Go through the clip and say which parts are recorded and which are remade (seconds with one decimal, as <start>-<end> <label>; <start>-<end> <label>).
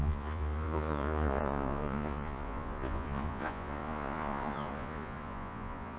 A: 0.0-6.0 remade